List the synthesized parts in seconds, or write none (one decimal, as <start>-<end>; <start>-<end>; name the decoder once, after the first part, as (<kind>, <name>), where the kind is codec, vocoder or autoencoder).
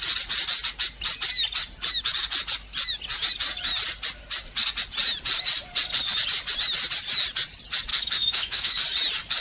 7.9-8.8 (autoencoder, DAC-VAE)